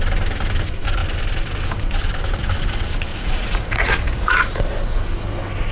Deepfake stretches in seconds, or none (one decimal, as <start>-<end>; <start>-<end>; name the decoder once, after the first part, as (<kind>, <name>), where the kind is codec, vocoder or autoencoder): 3.1-4.6 (vocoder, Vocos)